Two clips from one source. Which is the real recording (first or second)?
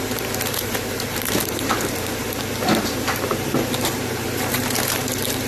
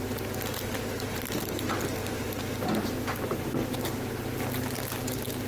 second